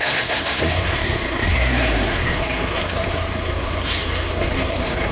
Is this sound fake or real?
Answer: fake